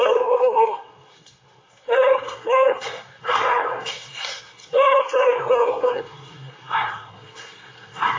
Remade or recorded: remade